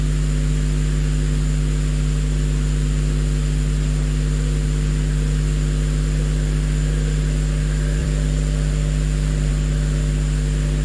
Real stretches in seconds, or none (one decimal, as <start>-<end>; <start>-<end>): 0.0-8.0; 9.5-10.8

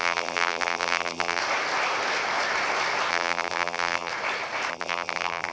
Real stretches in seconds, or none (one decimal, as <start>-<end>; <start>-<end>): 1.4-3.1; 4.1-4.7

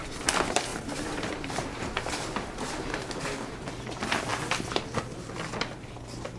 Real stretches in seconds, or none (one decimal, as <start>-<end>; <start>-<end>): 0.0-0.7; 3.1-6.4

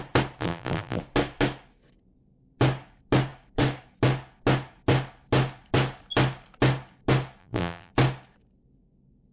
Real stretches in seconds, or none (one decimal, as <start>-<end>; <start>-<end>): 0.0-0.4; 1.0-7.4; 7.9-9.3

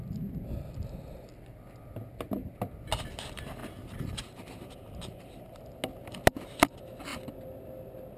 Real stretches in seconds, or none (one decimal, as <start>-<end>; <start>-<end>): 0.0-3.6; 5.6-8.2

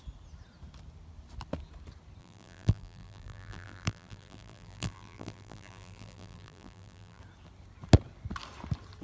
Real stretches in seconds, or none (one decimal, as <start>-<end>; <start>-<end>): 0.0-2.2; 7.2-9.0